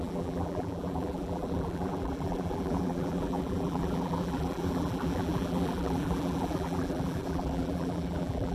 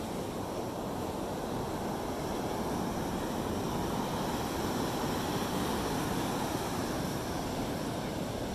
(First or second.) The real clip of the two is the second